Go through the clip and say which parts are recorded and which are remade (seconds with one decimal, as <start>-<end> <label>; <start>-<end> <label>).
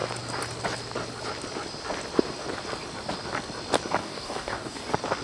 0.0-4.0 recorded; 4.0-4.8 remade; 4.8-5.2 recorded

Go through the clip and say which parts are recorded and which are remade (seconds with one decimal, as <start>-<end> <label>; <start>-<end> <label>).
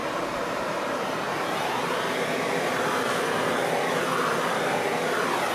0.0-2.8 remade; 2.8-5.5 recorded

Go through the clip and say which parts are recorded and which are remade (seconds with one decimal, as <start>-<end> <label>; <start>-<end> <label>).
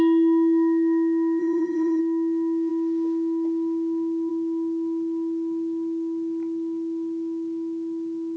0.0-1.4 recorded; 1.4-2.0 remade; 2.0-8.4 recorded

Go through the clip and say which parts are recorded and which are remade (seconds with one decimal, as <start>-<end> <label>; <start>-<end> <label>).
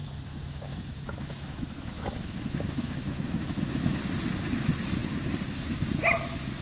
0.0-4.0 remade; 4.0-6.6 recorded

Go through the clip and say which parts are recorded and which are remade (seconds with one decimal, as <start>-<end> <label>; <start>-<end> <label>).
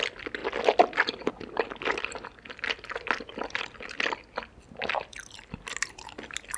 0.0-6.6 recorded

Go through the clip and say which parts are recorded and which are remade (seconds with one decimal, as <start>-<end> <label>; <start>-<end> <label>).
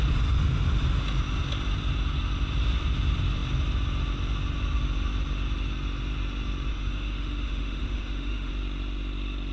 0.0-6.7 recorded; 6.7-8.5 remade; 8.5-9.5 recorded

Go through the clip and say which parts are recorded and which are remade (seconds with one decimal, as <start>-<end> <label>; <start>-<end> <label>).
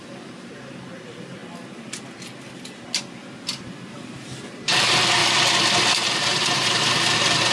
0.0-1.4 remade; 1.4-4.5 recorded; 4.5-5.2 remade; 5.2-5.9 recorded; 5.9-7.5 remade